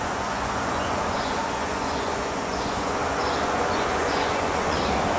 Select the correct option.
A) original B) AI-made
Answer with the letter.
B